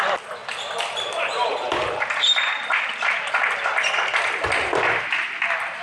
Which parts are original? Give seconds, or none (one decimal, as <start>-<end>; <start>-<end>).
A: 0.0-0.4; 1.9-5.8